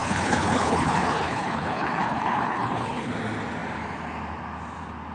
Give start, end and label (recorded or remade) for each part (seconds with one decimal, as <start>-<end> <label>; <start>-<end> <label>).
0.0-3.1 remade; 3.1-5.1 recorded